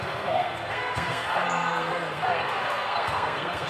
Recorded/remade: remade